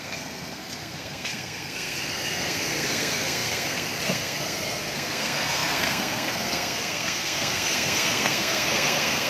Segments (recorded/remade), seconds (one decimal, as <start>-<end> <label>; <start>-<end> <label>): 0.0-9.3 remade